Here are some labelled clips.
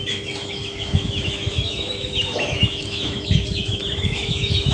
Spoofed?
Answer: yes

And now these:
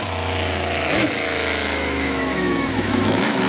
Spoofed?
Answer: yes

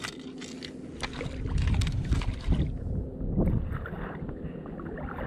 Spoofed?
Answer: no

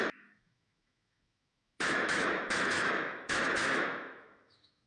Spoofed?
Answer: yes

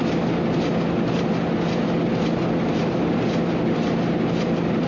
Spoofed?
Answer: no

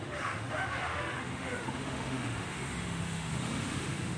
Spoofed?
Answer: yes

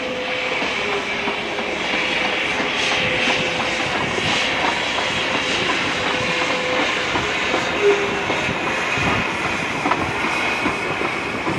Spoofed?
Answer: no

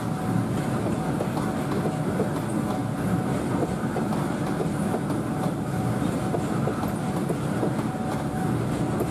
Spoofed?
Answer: no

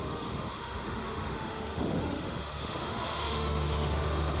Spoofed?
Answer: yes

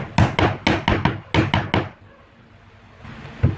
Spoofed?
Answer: no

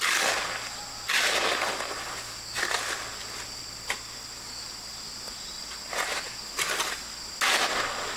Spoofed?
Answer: no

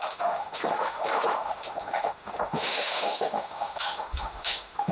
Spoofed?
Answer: yes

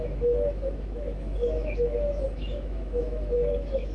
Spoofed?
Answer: yes